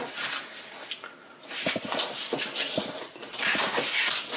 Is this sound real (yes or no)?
yes